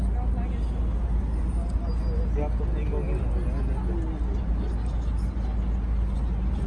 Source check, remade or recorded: recorded